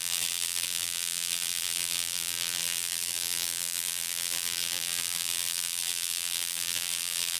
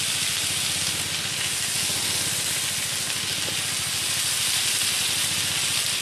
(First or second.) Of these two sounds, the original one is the second